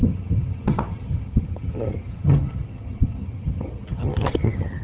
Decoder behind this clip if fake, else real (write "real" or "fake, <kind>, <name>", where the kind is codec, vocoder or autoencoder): fake, vocoder, HiFi-GAN